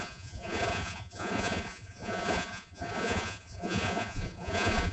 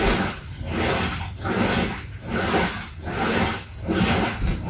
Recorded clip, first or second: second